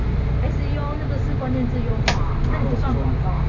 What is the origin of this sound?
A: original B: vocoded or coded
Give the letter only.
A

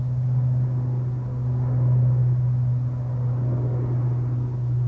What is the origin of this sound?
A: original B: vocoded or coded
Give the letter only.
A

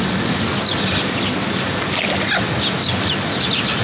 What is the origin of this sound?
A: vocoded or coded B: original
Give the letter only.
B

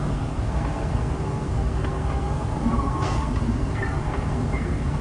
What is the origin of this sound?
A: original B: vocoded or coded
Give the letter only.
B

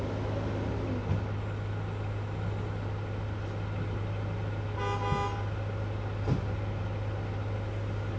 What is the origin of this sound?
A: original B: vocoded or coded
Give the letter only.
A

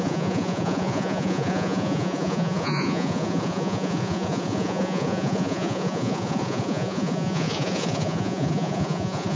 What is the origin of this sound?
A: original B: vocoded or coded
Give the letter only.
B